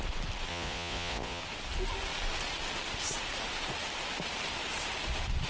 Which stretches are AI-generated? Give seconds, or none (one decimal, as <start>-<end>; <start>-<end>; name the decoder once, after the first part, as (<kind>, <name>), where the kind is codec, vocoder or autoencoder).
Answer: 0.5-1.4 (vocoder, Vocos)